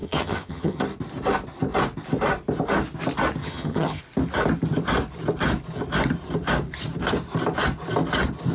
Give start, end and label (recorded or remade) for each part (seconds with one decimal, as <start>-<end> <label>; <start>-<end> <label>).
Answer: 0.0-0.8 remade; 0.8-3.4 recorded; 3.4-4.0 remade; 4.0-8.5 recorded

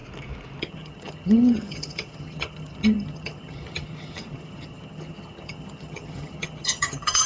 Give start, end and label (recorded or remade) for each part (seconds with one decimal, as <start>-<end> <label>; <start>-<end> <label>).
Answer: 0.0-0.6 recorded; 0.6-7.3 remade

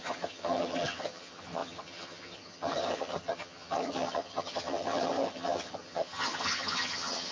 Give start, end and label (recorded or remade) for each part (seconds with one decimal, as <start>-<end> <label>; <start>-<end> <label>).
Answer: 0.0-7.3 remade

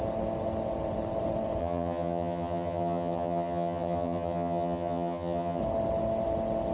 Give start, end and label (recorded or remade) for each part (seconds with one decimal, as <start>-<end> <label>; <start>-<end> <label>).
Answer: 0.0-1.6 recorded; 1.6-5.6 remade; 5.6-6.7 recorded

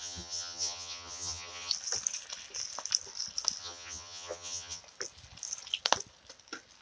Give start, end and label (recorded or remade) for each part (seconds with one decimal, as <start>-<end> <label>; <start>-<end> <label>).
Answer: 0.0-1.7 remade; 1.7-3.6 recorded; 3.6-4.8 remade; 4.8-6.8 recorded

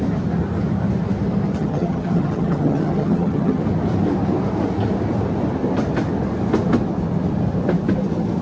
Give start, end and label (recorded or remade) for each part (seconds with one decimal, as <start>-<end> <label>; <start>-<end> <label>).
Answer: 0.0-1.5 recorded; 1.5-3.6 remade; 3.6-8.4 recorded

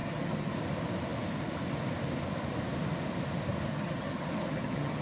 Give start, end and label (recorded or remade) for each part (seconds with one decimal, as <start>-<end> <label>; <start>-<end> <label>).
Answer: 0.0-0.5 remade; 0.5-3.7 recorded; 3.7-5.0 remade